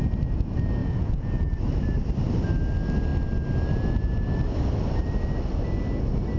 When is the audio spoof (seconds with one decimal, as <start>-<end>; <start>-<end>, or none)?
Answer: 0.8-1.3